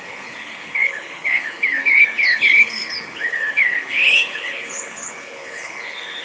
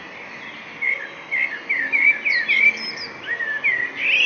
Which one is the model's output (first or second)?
first